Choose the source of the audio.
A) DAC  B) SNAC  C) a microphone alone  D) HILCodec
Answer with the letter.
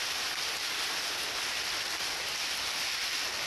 C